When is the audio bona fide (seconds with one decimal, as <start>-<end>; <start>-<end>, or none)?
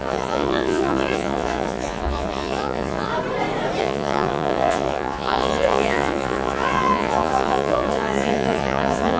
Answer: 3.1-3.8